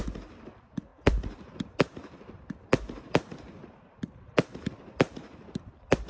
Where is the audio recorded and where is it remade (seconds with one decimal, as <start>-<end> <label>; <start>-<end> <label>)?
0.0-6.1 recorded